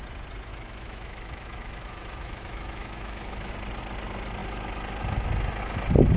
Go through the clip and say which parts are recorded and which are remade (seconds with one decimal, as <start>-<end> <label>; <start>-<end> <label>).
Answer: 0.0-0.5 recorded; 0.5-3.5 remade; 3.5-6.2 recorded